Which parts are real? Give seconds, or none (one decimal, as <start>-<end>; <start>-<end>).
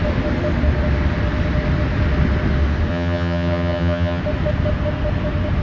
0.0-2.9; 4.2-5.6